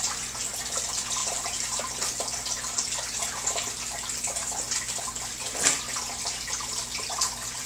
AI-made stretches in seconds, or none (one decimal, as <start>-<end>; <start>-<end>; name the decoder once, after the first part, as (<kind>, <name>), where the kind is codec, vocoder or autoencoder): 1.2-1.8 (vocoder, BigVGAN v2)